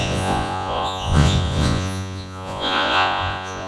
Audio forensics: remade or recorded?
remade